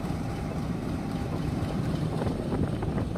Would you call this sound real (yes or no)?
no